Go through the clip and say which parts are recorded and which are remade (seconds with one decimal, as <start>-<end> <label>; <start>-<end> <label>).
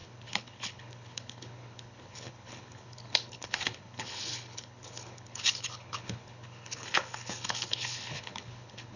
0.0-9.0 remade